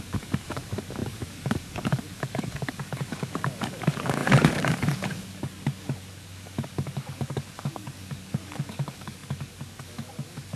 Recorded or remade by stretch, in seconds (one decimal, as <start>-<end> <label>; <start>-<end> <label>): 0.0-10.6 remade